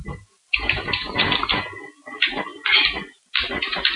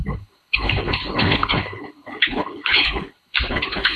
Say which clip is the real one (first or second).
first